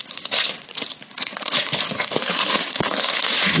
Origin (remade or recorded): remade